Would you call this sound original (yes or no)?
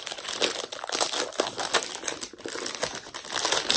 yes